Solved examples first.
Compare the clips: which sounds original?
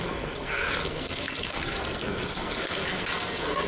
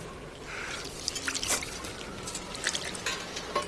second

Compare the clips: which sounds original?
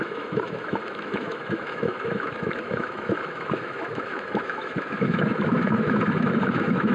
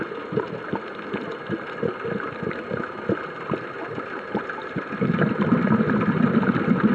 second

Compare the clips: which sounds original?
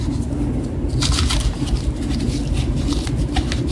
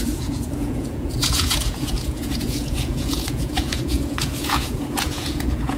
first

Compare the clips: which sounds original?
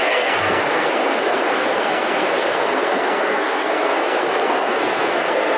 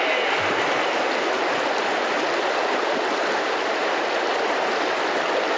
second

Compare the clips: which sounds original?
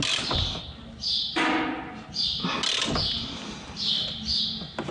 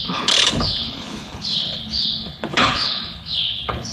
first